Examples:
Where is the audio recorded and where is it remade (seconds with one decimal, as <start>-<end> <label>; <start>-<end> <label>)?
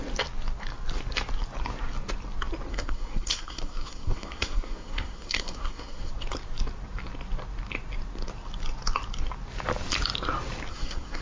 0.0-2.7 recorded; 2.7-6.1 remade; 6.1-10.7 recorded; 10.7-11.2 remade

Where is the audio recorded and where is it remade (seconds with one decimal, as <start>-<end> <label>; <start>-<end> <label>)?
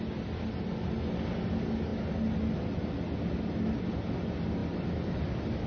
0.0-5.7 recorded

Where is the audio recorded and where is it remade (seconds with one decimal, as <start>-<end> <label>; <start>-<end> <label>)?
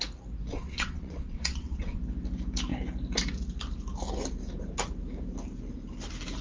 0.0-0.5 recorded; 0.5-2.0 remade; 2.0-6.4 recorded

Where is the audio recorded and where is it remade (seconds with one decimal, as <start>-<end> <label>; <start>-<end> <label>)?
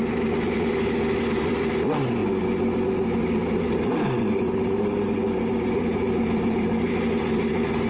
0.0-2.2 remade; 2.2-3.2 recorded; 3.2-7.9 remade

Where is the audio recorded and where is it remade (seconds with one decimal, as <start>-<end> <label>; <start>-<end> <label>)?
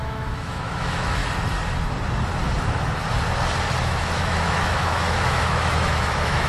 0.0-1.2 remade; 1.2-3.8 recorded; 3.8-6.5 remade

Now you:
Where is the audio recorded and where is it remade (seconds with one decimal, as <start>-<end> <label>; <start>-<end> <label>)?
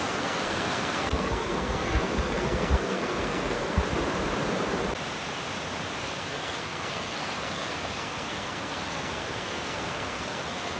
0.0-3.8 remade; 3.8-6.0 recorded; 6.0-10.8 remade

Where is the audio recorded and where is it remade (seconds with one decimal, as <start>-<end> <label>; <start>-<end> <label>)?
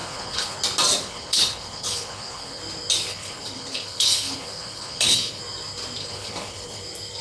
0.0-0.6 remade; 0.6-1.0 recorded; 1.0-2.6 remade; 2.6-3.1 recorded; 3.1-5.4 remade; 5.4-6.0 recorded; 6.0-6.8 remade; 6.8-7.2 recorded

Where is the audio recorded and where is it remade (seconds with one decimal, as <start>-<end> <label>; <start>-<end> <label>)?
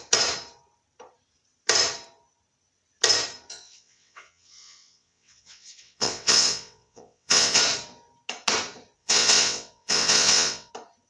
0.0-3.5 recorded; 3.5-7.6 remade; 7.6-9.0 recorded; 9.0-10.7 remade; 10.7-11.1 recorded